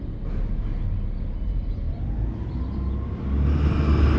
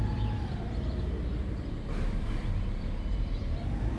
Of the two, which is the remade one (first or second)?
second